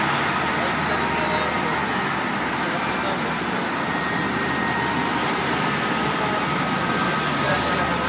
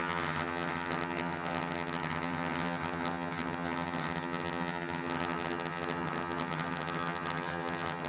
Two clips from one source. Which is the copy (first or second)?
second